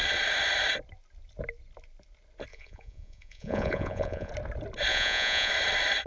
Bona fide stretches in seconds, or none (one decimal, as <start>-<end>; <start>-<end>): 0.0-2.5; 4.3-4.9; 5.5-6.1